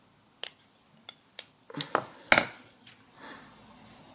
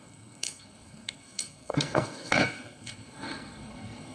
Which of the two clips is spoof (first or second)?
second